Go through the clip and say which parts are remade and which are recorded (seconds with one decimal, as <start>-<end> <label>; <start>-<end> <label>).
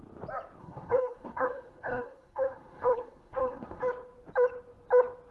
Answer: 0.0-0.6 recorded; 0.6-3.8 remade; 3.8-5.3 recorded